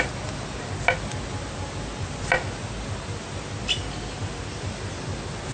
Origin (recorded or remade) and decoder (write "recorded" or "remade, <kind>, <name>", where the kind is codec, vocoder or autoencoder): recorded